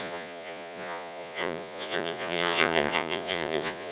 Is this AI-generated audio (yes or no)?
yes